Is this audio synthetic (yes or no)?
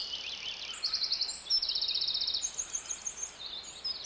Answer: no